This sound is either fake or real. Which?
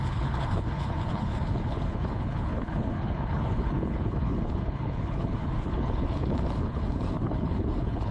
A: fake